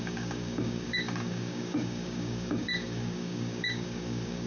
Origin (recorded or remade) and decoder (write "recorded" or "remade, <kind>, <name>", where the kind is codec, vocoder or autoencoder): remade, codec, DAC